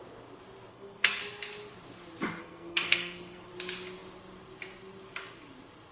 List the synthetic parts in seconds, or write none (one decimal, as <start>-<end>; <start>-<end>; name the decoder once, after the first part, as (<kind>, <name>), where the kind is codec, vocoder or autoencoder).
0.7-1.2 (codec, SNAC); 2.4-3.5